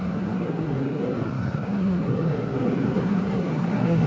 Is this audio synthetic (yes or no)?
yes